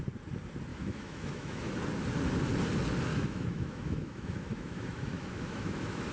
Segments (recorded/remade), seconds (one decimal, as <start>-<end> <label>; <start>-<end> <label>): 0.0-0.7 recorded; 0.7-1.7 remade; 1.7-3.1 recorded; 3.1-6.1 remade